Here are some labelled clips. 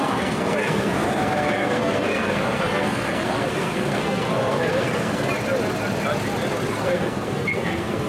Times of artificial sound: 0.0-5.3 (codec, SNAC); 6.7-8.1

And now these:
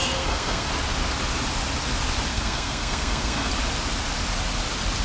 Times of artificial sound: 0.0-0.7 (codec, SNAC); 2.3-3.5

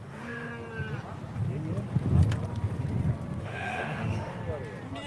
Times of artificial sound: 0.0-0.5 (autoencoder, DAC-VAE); 3.4-4.4

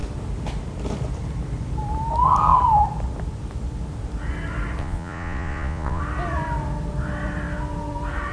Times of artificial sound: 4.8-6.0 (vocoder, Vocos)

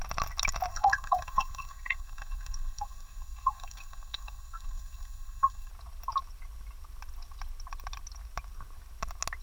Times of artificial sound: 0.7-5.7 (codec, SNAC)

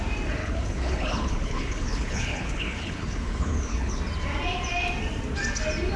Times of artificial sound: 0.4-4.0 (codec, HILCodec)